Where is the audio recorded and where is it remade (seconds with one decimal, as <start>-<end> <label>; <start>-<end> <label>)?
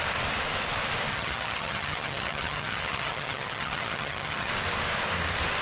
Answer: 0.0-1.1 recorded; 1.1-4.5 remade; 4.5-5.6 recorded